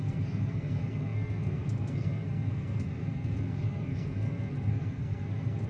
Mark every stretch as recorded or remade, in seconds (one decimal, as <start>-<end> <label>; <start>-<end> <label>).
0.0-5.7 remade